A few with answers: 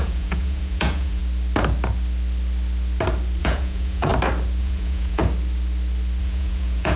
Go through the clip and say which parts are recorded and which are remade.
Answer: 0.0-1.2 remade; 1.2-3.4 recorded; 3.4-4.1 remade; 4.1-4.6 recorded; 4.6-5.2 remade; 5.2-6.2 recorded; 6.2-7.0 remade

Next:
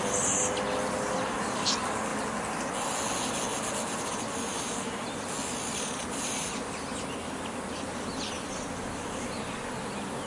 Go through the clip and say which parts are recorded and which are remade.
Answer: 0.0-10.3 recorded

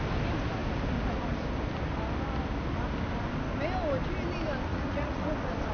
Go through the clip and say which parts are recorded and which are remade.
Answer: 0.0-4.7 recorded; 4.7-5.3 remade; 5.3-5.7 recorded